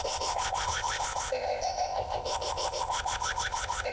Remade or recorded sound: remade